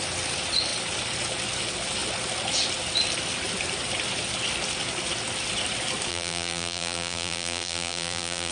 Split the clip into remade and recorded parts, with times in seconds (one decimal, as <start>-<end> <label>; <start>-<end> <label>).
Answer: 0.0-6.1 recorded; 6.1-8.5 remade